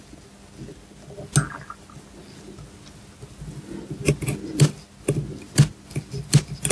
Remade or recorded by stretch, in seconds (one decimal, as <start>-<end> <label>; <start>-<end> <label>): 0.0-6.7 recorded